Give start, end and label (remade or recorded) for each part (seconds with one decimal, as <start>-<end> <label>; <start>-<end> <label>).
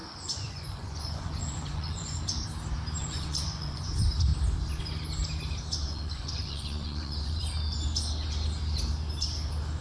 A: 0.0-2.2 remade; 2.2-3.0 recorded; 3.0-3.8 remade; 3.8-5.8 recorded; 5.8-7.4 remade; 7.4-9.8 recorded